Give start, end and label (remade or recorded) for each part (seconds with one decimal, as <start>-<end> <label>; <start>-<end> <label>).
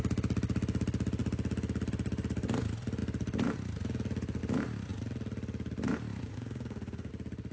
0.0-6.3 recorded; 6.3-7.1 remade; 7.1-7.5 recorded